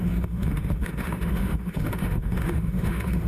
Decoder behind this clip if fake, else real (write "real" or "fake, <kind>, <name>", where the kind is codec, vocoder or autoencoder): fake, autoencoder, DAC-VAE